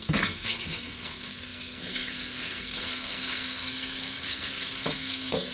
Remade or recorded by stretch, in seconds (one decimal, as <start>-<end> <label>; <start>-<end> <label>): 0.0-5.5 remade